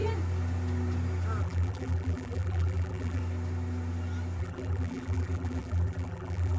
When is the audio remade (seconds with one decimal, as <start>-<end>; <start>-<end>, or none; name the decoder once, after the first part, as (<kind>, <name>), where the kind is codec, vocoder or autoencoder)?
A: 1.4-3.2 (vocoder, BigVGAN v2); 4.4-6.6